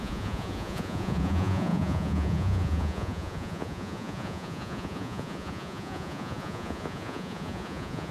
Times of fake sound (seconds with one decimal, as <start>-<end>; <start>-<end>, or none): 0.0-8.1